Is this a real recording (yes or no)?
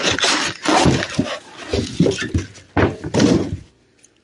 yes